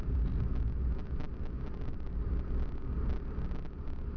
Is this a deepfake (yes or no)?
no